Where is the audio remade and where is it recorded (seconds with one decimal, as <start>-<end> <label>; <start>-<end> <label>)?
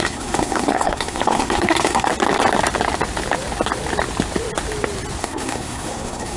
0.0-2.1 remade; 2.1-5.2 recorded; 5.2-6.4 remade